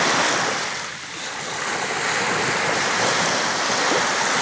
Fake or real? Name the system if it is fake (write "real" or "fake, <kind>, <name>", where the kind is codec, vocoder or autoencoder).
real